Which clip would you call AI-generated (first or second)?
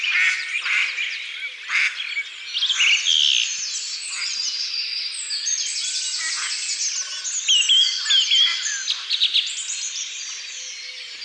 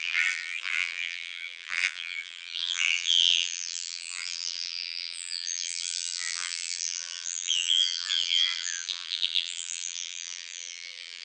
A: second